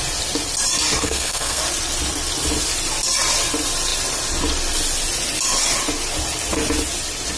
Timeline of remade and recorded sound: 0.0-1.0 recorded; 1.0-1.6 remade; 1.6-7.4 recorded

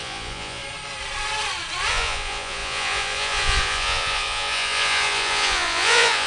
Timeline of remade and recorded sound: 0.0-0.6 remade; 0.6-1.9 recorded; 1.9-6.3 remade

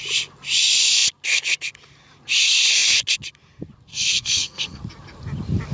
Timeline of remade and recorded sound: 0.0-3.9 recorded; 3.9-4.8 remade; 4.8-5.7 recorded

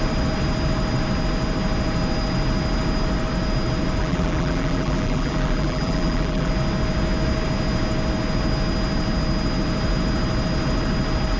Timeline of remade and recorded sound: 0.0-4.0 recorded; 4.0-6.5 remade; 6.5-11.4 recorded

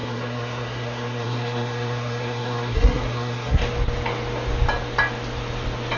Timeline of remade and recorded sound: 0.0-3.6 remade; 3.6-6.0 recorded

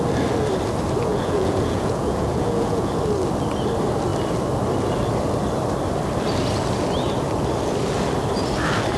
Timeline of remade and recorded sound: 0.0-1.1 recorded; 1.1-2.9 remade; 2.9-9.0 recorded